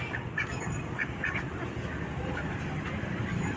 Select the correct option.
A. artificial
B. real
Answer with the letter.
B